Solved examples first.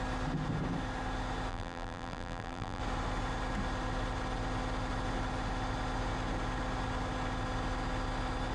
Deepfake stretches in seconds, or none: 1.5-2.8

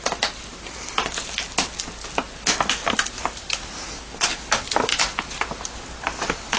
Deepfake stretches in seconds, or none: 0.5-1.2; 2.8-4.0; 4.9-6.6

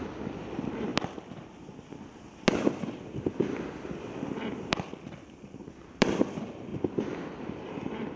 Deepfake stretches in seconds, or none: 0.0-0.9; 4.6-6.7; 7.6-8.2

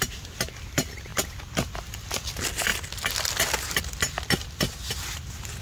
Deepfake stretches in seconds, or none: none

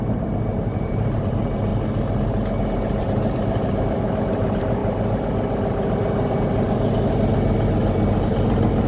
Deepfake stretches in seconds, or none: 0.0-1.7; 2.6-4.8; 8.2-8.9

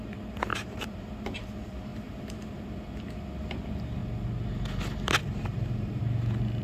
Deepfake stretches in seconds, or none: 0.5-1.1; 1.9-2.6; 5.2-6.0